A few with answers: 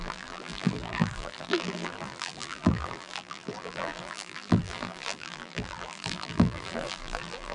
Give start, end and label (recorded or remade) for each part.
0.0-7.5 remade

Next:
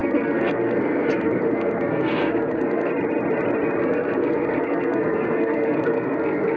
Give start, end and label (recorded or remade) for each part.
0.0-2.9 remade; 2.9-3.8 recorded; 3.8-6.6 remade

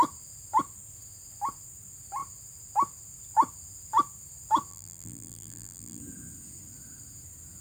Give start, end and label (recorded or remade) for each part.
0.0-4.7 recorded; 4.7-6.0 remade; 6.0-7.6 recorded

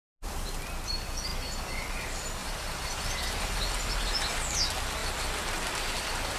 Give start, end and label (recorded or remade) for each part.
0.0-2.4 recorded; 2.4-3.4 remade; 3.4-6.4 recorded

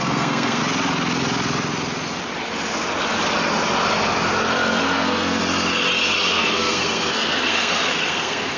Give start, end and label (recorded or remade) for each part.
0.0-0.6 remade; 0.6-4.8 recorded; 4.8-5.4 remade; 5.4-6.3 recorded; 6.3-8.6 remade

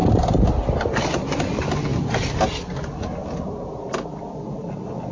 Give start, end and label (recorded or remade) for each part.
0.0-5.1 recorded

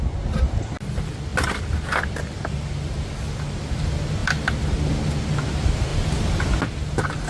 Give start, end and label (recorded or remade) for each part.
0.0-1.3 recorded; 1.3-2.0 remade; 2.0-4.2 recorded; 4.2-4.9 remade; 4.9-5.9 recorded; 5.9-6.4 remade; 6.4-7.3 recorded